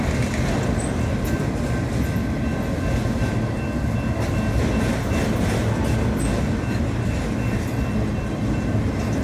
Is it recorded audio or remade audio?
recorded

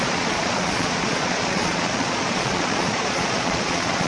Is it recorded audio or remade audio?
remade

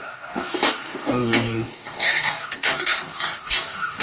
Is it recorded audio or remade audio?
remade